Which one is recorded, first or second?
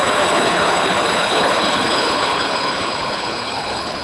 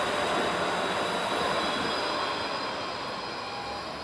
second